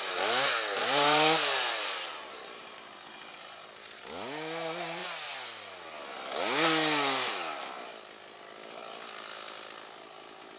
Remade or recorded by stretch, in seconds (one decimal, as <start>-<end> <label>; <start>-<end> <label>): 0.0-0.8 recorded; 0.8-4.0 remade; 4.0-10.6 recorded